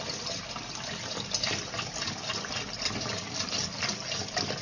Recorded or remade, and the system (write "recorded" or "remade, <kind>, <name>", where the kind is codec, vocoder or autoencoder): recorded